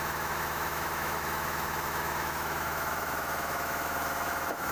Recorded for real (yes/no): no